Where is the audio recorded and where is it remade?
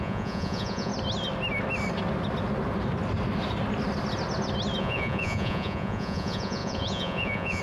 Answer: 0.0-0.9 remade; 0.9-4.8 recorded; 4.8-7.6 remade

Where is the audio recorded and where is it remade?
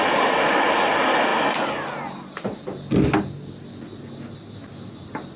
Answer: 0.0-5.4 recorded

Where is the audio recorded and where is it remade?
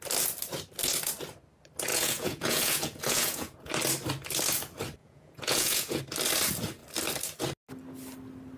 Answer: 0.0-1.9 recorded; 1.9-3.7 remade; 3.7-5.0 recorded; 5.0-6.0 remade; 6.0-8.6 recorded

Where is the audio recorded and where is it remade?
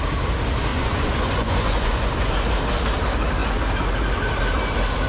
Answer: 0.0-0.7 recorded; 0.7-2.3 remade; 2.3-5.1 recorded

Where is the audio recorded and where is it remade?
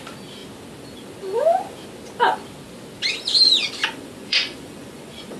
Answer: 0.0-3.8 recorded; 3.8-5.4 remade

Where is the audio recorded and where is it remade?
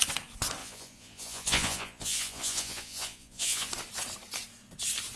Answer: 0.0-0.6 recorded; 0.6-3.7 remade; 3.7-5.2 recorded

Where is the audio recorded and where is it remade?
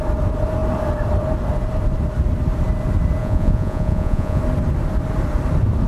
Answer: 0.0-3.2 recorded; 3.2-4.4 remade; 4.4-5.9 recorded